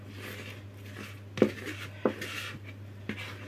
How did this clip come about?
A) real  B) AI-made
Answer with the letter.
A